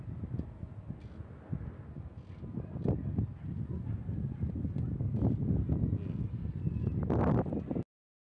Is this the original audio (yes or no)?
yes